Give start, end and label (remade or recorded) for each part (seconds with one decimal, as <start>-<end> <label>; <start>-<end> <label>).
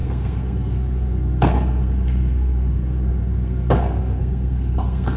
0.0-5.2 remade